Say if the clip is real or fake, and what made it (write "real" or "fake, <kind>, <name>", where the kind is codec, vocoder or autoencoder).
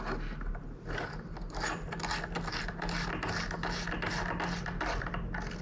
real